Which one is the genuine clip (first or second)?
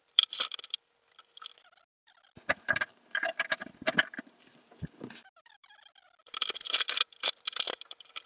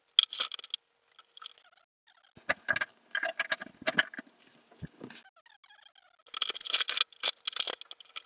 second